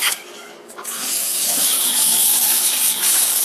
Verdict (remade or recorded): remade